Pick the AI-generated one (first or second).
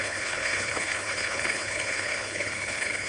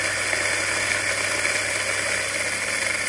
first